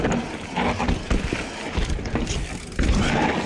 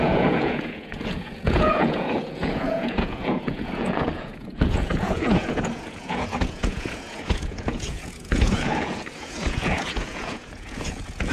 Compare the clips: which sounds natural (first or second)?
first